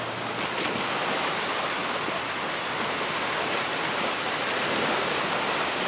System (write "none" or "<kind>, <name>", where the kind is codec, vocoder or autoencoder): none